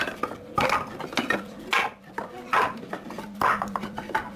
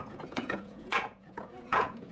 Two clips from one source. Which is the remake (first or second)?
second